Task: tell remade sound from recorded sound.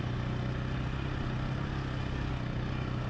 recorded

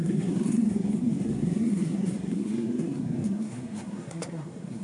remade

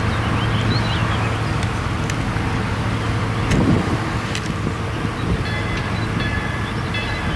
recorded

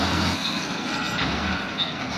remade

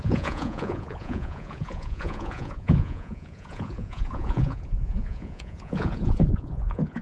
remade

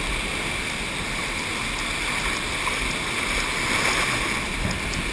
recorded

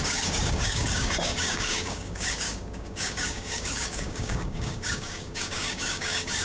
remade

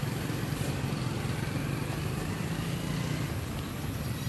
recorded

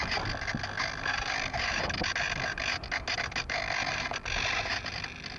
recorded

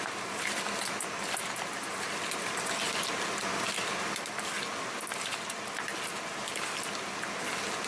recorded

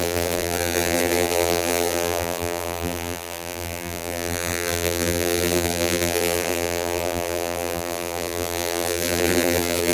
remade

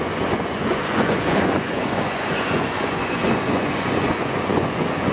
remade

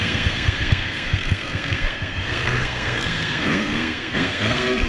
remade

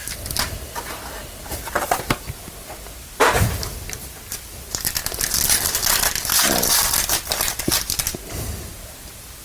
recorded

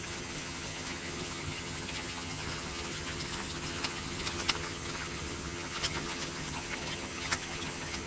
remade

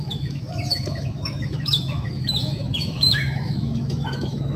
remade